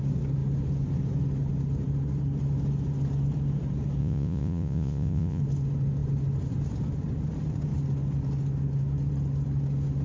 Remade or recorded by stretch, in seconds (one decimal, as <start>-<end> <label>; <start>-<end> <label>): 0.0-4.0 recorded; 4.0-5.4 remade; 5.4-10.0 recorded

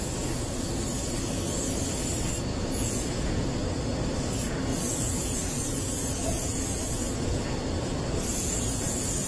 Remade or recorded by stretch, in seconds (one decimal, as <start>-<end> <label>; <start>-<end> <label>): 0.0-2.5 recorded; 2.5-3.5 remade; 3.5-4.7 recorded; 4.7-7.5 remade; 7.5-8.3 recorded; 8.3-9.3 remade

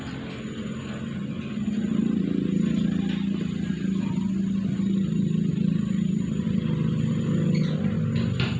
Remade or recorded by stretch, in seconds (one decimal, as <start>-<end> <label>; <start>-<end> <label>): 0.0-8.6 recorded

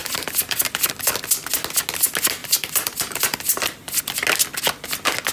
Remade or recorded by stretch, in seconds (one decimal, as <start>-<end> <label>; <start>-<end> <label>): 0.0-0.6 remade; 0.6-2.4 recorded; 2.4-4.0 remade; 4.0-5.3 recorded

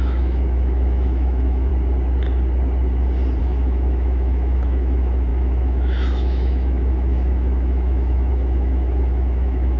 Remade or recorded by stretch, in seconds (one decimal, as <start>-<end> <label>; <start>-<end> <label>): 0.0-1.7 remade; 1.7-3.4 recorded; 3.4-9.8 remade